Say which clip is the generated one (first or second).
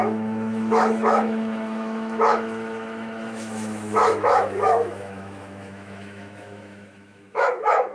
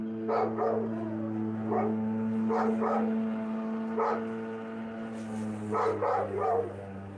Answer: first